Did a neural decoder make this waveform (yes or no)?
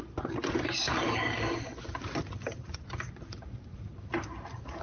no